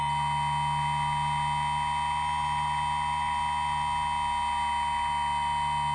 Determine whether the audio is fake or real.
real